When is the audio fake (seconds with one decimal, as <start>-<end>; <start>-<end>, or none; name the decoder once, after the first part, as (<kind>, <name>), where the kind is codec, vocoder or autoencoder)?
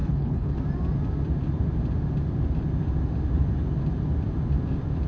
0.0-0.6 (codec, HILCodec)